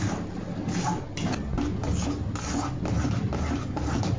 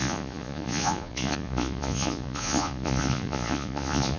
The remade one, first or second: second